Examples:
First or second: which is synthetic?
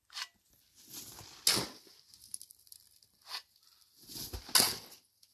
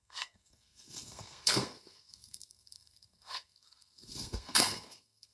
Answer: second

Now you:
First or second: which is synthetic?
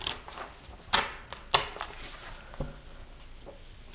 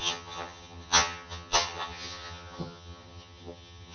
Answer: second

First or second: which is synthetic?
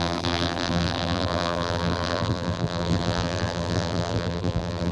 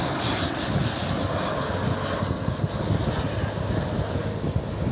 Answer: first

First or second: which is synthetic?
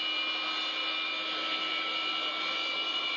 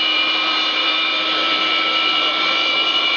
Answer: second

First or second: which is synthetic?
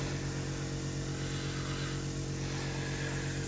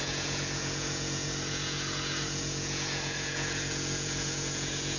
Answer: second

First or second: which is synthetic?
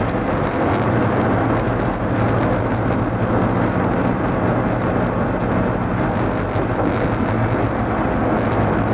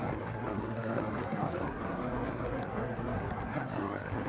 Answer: second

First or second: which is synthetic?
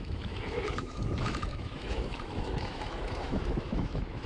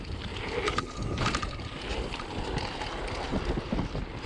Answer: first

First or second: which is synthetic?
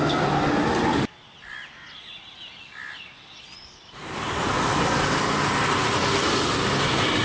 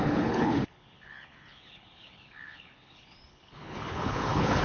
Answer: second